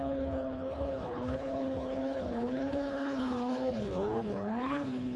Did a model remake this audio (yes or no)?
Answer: yes